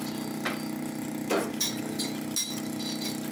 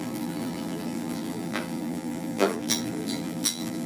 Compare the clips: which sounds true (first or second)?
first